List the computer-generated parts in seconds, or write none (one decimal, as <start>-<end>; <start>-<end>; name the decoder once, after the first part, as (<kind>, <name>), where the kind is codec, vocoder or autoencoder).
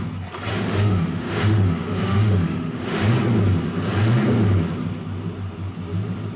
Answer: 0.5-3.1 (autoencoder, DAC-VAE)